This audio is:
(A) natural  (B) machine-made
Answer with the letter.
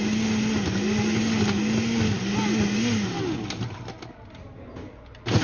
A